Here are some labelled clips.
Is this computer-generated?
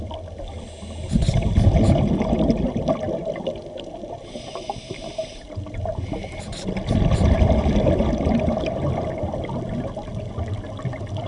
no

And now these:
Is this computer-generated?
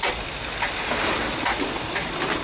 no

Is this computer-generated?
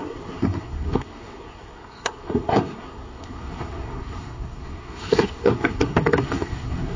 yes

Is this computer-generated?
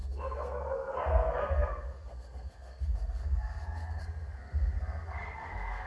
yes